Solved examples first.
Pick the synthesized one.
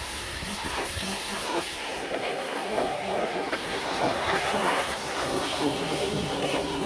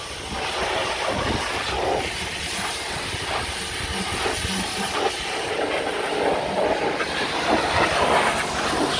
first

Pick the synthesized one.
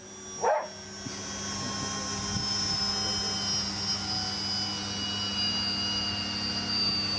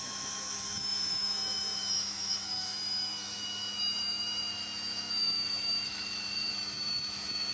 second